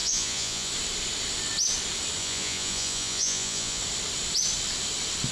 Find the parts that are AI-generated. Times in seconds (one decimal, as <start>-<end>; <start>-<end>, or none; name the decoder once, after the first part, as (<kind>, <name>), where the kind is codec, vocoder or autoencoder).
0.0-0.7 (vocoder, Vocos); 2.2-3.8